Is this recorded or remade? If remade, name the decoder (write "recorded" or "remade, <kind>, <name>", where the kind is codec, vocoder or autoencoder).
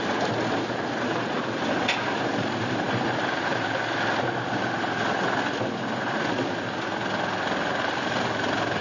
recorded